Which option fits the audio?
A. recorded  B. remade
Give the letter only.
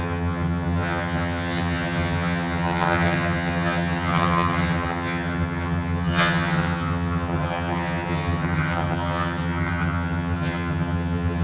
B